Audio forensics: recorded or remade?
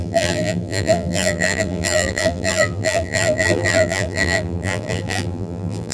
remade